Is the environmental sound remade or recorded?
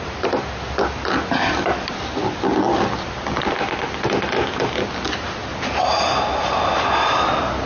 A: recorded